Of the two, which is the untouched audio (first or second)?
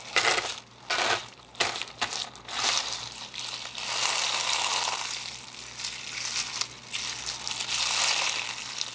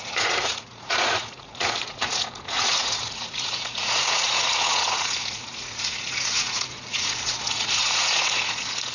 first